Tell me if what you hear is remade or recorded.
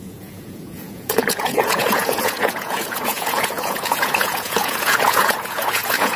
remade